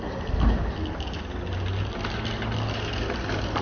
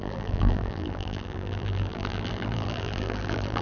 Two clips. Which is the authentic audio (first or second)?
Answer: first